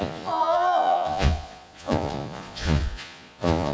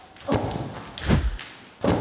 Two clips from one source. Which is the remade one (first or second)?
first